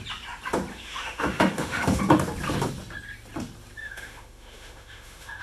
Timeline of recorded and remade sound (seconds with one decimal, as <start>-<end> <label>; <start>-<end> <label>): 0.0-0.7 recorded; 0.7-2.0 remade; 2.0-3.8 recorded; 3.8-5.4 remade

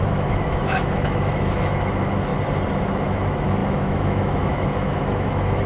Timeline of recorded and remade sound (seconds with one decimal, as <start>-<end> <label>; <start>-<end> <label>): 0.0-2.3 remade; 2.3-2.8 recorded; 2.8-5.7 remade

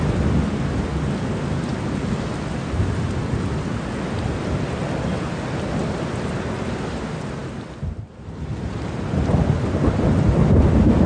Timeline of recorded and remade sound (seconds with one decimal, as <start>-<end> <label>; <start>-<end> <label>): 0.0-11.1 recorded

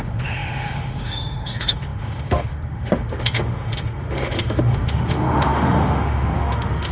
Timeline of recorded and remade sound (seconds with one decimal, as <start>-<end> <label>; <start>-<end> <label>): 0.0-6.9 remade

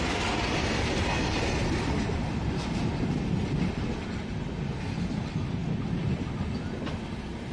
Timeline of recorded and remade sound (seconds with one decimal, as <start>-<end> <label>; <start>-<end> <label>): 0.0-7.5 recorded